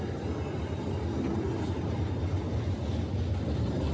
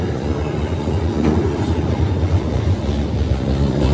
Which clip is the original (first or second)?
first